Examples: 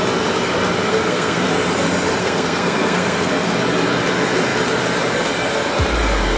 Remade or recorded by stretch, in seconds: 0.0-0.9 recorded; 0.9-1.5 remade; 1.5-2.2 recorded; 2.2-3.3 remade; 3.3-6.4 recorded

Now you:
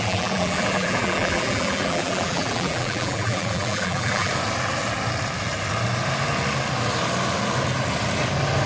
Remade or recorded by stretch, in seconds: 0.0-4.3 remade; 4.3-8.7 recorded

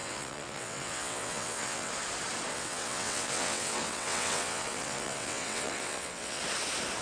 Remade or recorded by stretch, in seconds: 0.0-1.9 remade; 1.9-2.5 recorded; 2.5-6.4 remade; 6.4-7.0 recorded

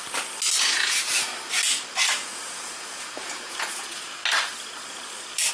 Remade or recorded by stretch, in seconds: 0.0-0.6 recorded; 0.6-1.3 remade; 1.3-2.1 recorded; 2.1-4.2 remade; 4.2-5.5 recorded

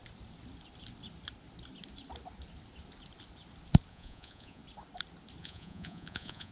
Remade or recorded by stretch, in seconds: 0.0-3.9 recorded; 3.9-4.6 remade; 4.6-5.4 recorded; 5.4-6.5 remade

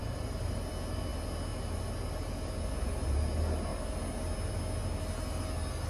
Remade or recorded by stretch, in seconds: 0.0-0.7 remade; 0.7-5.9 recorded

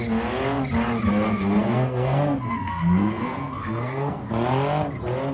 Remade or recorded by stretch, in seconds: 0.0-1.1 recorded; 1.1-4.3 remade; 4.3-5.3 recorded

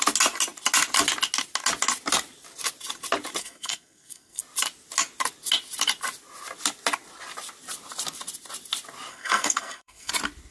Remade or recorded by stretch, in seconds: 0.0-3.4 recorded; 3.4-4.4 remade; 4.4-9.1 recorded; 9.1-10.1 remade; 10.1-10.5 recorded